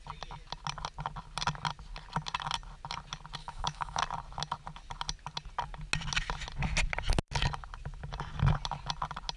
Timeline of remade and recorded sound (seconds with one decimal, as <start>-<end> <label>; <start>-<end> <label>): 0.0-3.4 recorded; 3.4-4.0 remade; 4.0-9.4 recorded